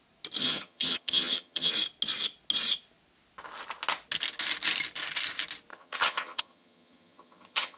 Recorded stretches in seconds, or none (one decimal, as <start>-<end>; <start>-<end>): 0.0-0.4; 1.7-5.7